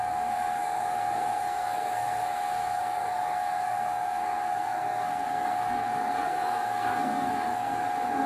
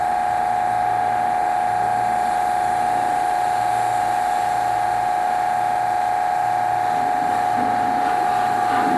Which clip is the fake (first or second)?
first